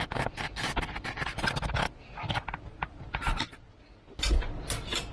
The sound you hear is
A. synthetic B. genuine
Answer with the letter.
B